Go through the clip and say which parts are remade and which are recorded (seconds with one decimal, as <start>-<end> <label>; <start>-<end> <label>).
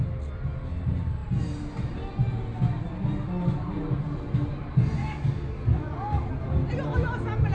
0.0-5.0 recorded; 5.0-6.3 remade; 6.3-7.5 recorded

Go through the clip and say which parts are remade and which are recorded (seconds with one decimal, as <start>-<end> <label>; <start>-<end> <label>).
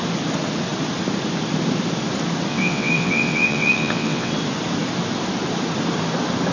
0.0-2.5 recorded; 2.5-4.3 remade; 4.3-6.5 recorded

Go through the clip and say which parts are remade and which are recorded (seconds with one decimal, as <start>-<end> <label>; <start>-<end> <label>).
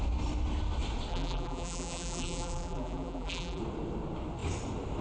0.0-1.1 recorded; 1.1-3.6 remade; 3.6-5.0 recorded